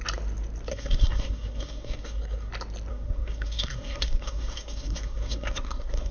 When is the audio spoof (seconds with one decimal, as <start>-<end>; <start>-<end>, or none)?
0.7-2.5; 2.9-6.1